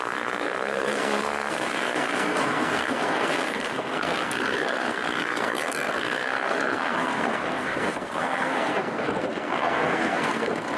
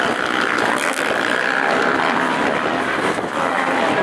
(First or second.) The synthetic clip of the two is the first